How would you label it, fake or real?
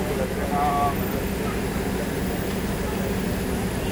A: real